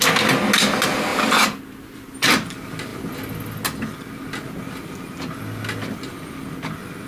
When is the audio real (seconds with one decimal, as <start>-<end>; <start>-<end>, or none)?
0.0-7.1